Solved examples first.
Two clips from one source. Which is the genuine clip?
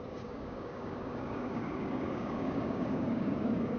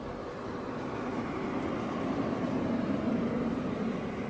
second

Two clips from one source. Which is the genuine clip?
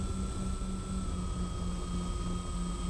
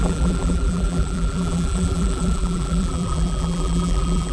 first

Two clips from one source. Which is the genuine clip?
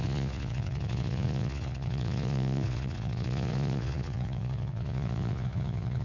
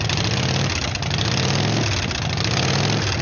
second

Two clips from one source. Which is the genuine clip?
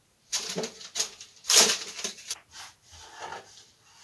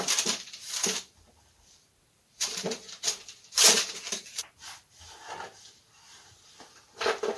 first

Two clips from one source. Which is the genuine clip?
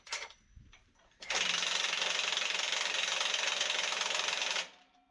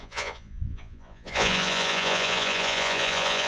first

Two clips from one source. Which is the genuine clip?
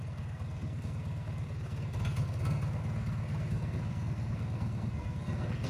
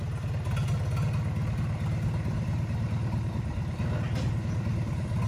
second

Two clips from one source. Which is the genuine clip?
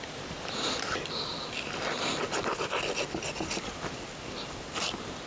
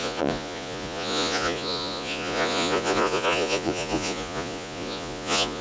first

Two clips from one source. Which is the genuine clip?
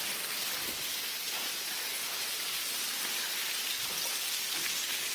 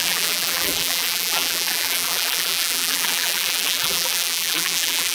first